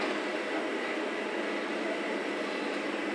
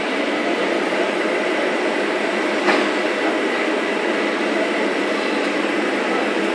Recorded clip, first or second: first